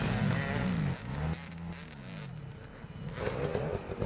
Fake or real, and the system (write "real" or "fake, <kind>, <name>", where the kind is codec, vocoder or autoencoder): real